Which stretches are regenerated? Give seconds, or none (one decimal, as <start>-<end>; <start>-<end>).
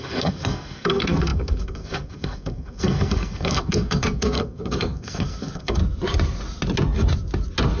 0.0-5.8